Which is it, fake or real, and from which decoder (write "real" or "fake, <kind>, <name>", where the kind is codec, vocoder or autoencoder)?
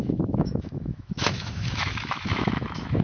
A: fake, autoencoder, DAC-VAE